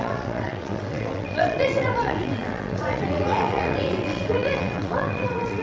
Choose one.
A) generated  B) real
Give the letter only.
A